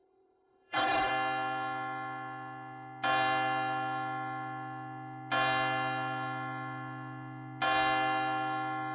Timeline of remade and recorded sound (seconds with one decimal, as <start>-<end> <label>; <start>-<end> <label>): 0.0-1.1 remade; 1.1-8.9 recorded